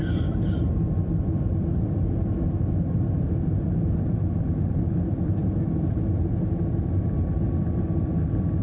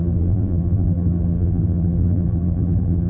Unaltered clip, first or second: first